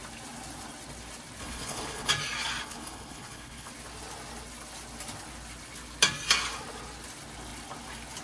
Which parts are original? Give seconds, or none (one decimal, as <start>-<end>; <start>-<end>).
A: 0.0-1.4; 2.1-2.7; 3.7-8.2